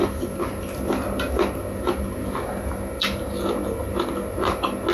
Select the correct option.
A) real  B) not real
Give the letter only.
A